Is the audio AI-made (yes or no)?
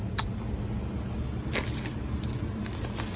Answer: no